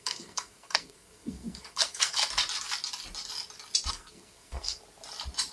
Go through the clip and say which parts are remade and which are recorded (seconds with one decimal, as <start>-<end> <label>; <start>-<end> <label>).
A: 0.0-2.2 remade; 2.2-3.9 recorded; 3.9-4.8 remade; 4.8-5.5 recorded